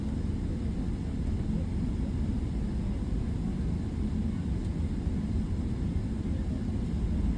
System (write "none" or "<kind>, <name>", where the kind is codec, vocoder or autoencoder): none